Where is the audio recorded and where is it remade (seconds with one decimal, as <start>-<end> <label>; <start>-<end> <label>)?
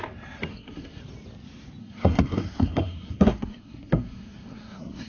0.0-0.5 recorded; 0.5-1.0 remade; 1.0-1.8 recorded; 1.8-5.1 remade